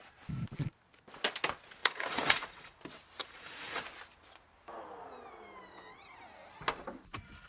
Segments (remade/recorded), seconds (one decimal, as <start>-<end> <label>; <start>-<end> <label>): 0.0-1.8 recorded; 1.8-2.8 remade; 2.8-3.2 recorded; 3.2-3.8 remade; 3.8-7.5 recorded

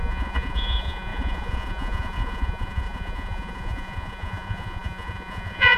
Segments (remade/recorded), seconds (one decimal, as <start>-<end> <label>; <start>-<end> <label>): 0.0-5.8 remade

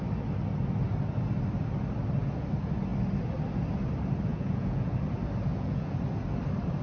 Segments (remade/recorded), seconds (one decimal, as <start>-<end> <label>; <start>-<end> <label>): 0.0-4.3 recorded; 4.3-4.9 remade; 4.9-5.5 recorded; 5.5-6.0 remade; 6.0-6.8 recorded

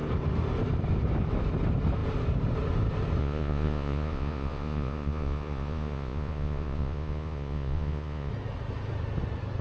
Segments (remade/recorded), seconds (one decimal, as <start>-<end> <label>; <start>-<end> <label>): 0.0-3.2 recorded; 3.2-8.3 remade; 8.3-9.6 recorded

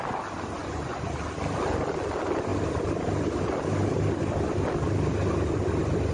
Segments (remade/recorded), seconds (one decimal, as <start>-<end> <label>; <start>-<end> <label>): 0.0-0.6 recorded; 0.6-1.1 remade; 1.1-6.1 recorded

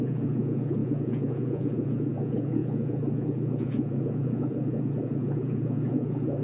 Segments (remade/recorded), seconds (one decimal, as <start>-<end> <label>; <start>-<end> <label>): 0.0-6.4 remade

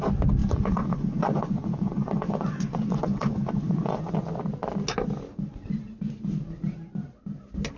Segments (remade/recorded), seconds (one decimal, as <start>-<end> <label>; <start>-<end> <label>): 0.0-0.4 recorded; 0.4-4.1 remade; 4.1-7.8 recorded